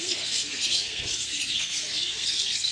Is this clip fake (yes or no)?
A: yes